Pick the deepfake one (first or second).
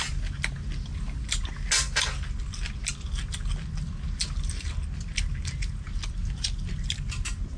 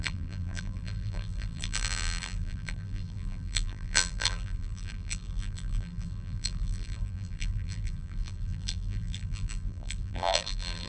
second